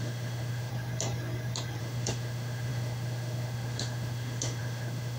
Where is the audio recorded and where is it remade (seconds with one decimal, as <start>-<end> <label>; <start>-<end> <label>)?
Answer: 0.0-0.7 remade; 0.7-1.8 recorded; 1.8-5.2 remade